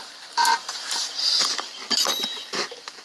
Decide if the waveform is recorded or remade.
remade